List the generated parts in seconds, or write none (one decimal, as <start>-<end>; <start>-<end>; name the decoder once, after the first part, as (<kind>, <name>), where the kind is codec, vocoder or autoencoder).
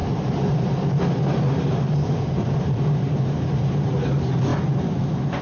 0.0-3.2 (vocoder, BigVGAN v2); 4.5-5.4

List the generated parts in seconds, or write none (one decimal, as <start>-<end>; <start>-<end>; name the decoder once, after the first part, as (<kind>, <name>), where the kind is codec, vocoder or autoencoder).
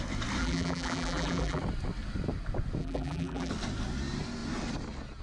0.4-1.6 (vocoder, BigVGAN v2); 2.8-3.5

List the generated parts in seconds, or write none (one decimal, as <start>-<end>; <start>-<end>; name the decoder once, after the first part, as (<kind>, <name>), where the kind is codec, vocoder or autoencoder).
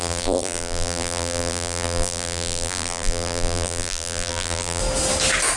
0.0-4.8 (vocoder, BigVGAN v2)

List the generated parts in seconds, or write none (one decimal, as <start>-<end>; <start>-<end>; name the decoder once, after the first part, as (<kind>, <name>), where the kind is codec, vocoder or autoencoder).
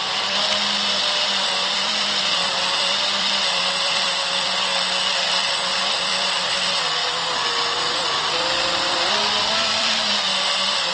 0.0-4.7 (vocoder, BigVGAN v2); 5.4-7.0; 9.1-10.9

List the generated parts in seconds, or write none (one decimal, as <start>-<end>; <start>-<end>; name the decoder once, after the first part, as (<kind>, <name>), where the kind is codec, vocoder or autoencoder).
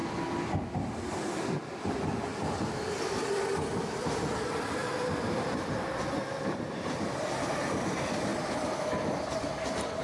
1.1-4.8 (vocoder, BigVGAN v2); 6.2-8.3